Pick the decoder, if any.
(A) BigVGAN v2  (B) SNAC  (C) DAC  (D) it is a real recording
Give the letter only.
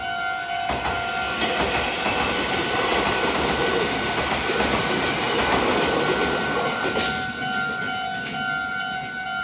D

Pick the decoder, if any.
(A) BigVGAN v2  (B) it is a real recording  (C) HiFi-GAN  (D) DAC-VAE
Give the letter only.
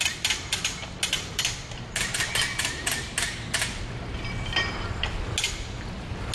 B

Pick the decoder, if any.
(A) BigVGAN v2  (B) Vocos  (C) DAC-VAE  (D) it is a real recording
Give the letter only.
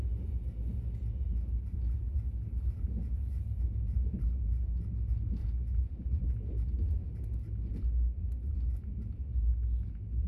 D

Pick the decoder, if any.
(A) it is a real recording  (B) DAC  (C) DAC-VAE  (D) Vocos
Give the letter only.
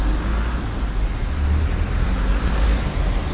A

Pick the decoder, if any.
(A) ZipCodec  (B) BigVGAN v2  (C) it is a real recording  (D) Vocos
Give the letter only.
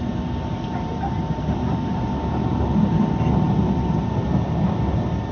C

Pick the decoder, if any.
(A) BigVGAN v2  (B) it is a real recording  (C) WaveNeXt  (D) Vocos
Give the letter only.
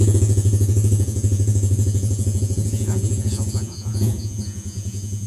D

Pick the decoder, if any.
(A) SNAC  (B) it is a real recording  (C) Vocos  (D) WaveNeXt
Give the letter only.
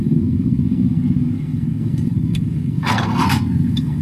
A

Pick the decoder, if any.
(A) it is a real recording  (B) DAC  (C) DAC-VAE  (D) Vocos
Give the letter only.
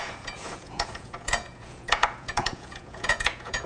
D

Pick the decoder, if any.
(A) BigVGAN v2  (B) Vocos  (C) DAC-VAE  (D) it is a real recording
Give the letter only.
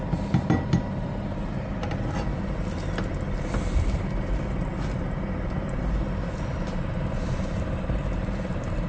D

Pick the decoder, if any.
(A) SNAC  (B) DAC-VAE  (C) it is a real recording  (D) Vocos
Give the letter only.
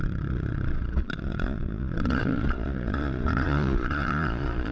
D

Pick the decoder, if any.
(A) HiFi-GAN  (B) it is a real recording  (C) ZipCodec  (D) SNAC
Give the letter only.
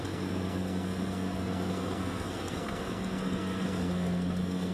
D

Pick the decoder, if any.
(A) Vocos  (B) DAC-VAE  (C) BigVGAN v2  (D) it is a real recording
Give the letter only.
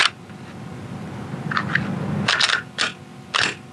D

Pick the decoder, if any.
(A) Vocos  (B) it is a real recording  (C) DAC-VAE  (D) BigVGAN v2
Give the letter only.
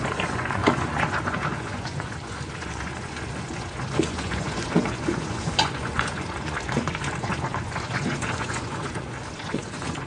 A